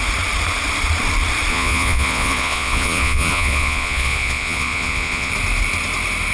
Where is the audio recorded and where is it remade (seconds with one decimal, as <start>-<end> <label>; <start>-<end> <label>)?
0.0-1.5 recorded; 1.5-5.3 remade; 5.3-6.3 recorded